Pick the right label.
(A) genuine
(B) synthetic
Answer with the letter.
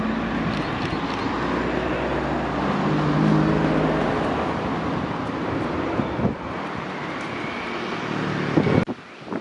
A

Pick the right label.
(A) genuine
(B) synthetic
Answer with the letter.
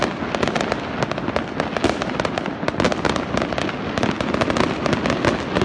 A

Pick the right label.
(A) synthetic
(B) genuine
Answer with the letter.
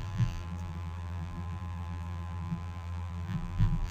A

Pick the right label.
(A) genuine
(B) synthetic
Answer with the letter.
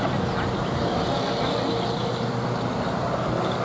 A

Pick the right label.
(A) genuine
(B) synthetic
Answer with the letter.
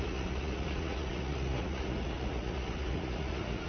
B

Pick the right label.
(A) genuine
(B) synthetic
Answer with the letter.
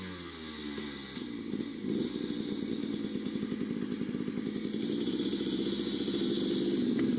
A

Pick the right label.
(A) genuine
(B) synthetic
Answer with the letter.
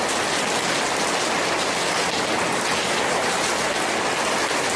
A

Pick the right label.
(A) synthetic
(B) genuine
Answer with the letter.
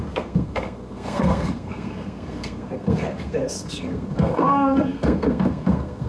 A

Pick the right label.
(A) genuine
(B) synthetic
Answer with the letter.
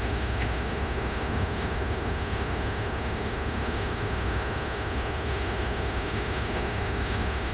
B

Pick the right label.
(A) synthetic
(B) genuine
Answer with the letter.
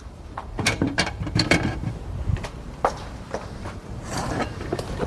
A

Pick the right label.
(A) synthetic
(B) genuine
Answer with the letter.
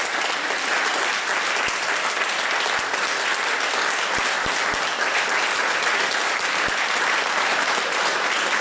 B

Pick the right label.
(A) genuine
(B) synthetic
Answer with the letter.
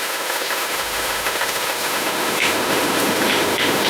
B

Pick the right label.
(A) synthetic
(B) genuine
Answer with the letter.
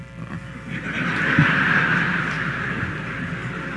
B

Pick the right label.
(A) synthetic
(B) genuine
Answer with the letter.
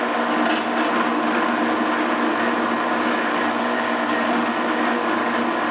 B